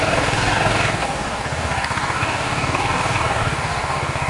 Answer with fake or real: fake